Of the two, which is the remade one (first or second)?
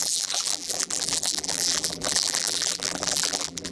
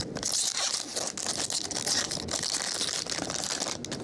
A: first